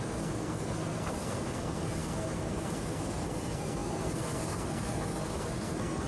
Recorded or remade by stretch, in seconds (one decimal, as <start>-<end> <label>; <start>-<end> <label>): 0.0-6.1 remade